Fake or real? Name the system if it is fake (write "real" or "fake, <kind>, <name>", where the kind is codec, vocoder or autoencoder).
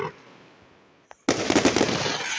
real